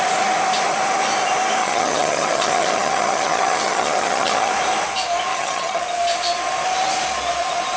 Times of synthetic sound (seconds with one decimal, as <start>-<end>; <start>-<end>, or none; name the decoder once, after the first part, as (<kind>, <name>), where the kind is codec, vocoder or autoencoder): 1.6-4.5 (vocoder, HiFi-GAN); 5.3-5.8